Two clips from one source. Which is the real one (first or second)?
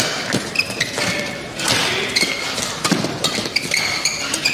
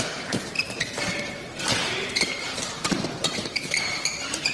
first